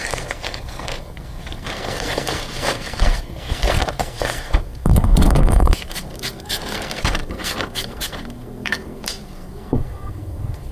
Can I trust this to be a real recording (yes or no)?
no